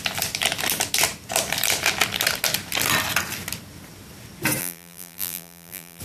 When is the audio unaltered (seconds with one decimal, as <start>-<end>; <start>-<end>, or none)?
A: 0.0-4.6

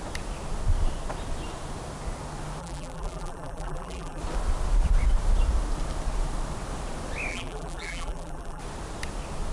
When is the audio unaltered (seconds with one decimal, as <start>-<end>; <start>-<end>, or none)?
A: 0.0-2.6; 4.2-7.3; 8.6-9.5

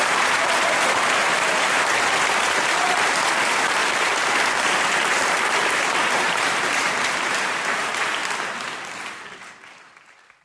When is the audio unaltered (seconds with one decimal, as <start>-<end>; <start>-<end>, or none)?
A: 3.8-4.6; 8.2-10.4

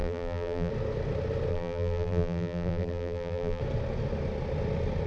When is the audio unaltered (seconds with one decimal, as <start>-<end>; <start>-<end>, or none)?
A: 0.7-1.5; 3.6-5.1

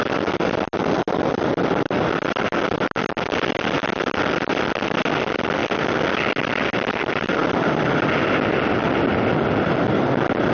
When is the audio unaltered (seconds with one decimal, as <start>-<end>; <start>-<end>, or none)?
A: 0.0-10.5

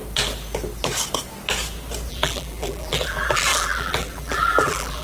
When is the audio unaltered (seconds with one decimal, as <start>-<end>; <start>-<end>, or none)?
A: 0.0-2.1

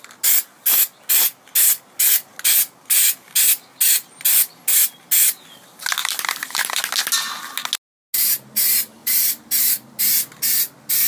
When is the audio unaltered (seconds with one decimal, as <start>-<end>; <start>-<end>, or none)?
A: 0.0-6.0; 6.8-9.0; 10.0-11.1